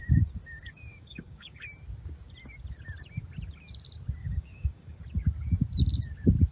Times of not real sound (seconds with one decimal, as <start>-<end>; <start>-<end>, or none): 0.9-1.6; 4.2-5.0